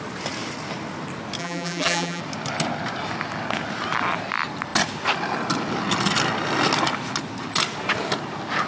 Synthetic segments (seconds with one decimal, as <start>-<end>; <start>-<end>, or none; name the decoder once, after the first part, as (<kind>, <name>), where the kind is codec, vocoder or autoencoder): 1.4-2.2 (vocoder, BigVGAN v2)